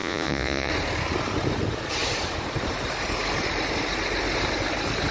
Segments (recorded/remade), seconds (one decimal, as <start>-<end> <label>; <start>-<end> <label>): 0.0-0.7 remade; 0.7-5.1 recorded